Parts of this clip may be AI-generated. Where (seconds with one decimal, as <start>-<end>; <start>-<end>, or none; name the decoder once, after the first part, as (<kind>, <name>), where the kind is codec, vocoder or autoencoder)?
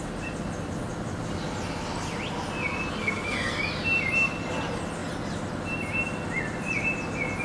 3.0-3.6 (codec, SNAC)